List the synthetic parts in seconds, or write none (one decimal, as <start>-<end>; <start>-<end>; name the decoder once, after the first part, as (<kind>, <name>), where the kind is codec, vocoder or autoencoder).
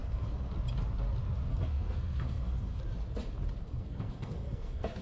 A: 0.0-0.5 (codec, SNAC); 1.5-2.8; 3.6-5.0